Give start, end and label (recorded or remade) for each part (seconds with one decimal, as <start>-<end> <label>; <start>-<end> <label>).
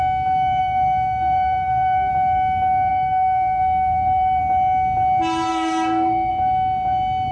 0.0-0.6 recorded; 0.6-2.1 remade; 2.1-2.9 recorded; 2.9-4.4 remade; 4.4-5.5 recorded; 5.5-6.3 remade; 6.3-7.3 recorded